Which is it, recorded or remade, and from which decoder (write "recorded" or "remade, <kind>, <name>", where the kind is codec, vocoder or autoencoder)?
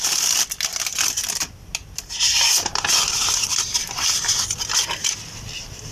recorded